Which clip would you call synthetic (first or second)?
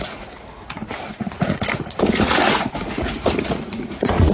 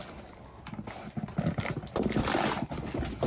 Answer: first